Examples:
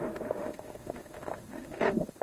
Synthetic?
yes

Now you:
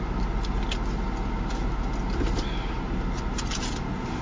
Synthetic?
no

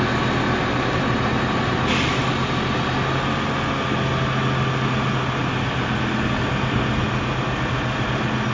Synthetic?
no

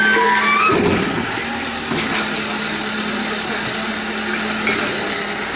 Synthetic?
no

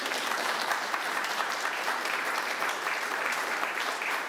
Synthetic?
yes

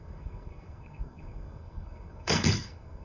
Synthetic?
yes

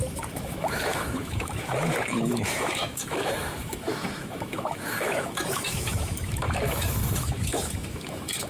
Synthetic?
yes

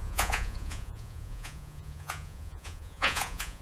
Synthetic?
yes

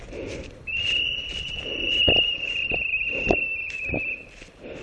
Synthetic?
yes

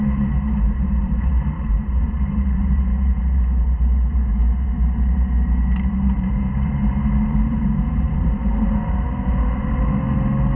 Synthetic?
yes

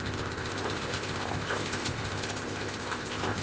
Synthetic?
yes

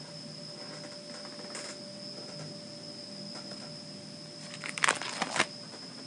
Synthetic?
no